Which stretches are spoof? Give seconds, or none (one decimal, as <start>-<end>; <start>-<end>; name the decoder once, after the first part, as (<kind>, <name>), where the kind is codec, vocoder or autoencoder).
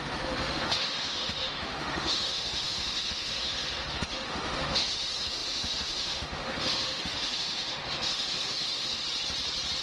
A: 0.0-9.0 (autoencoder, DAC-VAE)